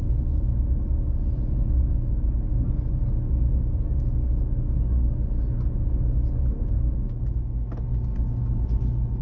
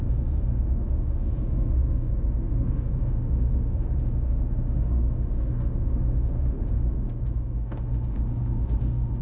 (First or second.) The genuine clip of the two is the first